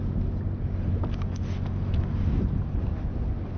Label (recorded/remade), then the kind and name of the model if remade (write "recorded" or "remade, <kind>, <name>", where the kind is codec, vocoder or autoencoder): recorded